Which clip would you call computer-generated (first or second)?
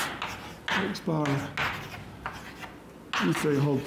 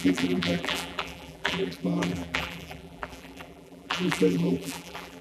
second